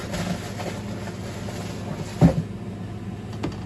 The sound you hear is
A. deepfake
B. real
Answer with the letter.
B